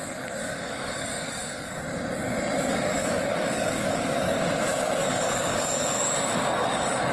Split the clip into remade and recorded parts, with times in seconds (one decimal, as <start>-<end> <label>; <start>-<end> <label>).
0.0-0.4 recorded; 0.4-1.8 remade; 1.8-2.7 recorded; 2.7-4.4 remade; 4.4-5.0 recorded; 5.0-7.1 remade